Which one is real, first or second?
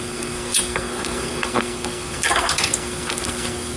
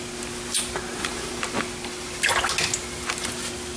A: second